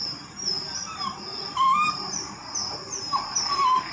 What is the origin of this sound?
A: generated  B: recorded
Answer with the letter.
B